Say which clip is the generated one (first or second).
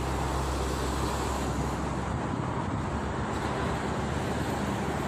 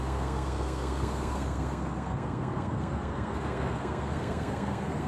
second